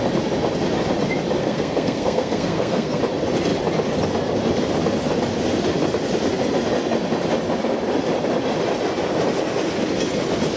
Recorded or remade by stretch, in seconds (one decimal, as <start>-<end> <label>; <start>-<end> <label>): 0.0-1.4 recorded; 1.4-3.0 remade; 3.0-10.6 recorded

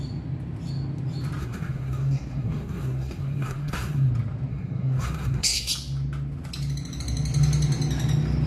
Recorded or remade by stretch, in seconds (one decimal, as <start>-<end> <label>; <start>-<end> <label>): 0.0-1.4 recorded; 1.4-4.1 remade; 4.1-4.5 recorded; 4.5-5.7 remade; 5.7-8.5 recorded